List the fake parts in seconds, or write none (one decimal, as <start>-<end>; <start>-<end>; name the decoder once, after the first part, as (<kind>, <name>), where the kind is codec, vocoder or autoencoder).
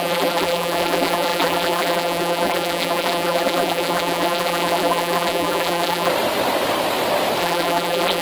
0.0-6.1 (vocoder, BigVGAN v2); 7.4-8.2